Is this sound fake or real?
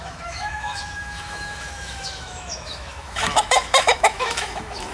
fake